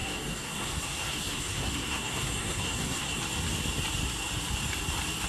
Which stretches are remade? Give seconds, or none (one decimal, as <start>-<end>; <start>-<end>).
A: 0.0-3.2